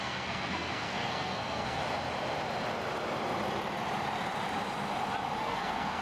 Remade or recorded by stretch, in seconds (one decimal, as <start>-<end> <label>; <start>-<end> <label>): 0.0-1.8 remade; 1.8-5.4 recorded; 5.4-6.0 remade